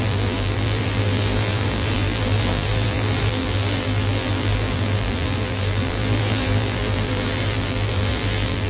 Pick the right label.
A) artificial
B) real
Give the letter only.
A